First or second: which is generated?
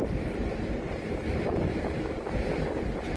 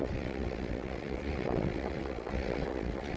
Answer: second